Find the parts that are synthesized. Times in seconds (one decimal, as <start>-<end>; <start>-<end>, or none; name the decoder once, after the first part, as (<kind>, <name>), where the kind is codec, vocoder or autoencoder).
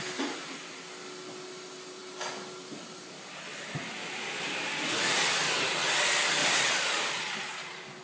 3.5-4.7 (vocoder, BigVGAN v2); 6.4-8.0